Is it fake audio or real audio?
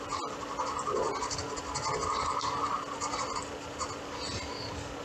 real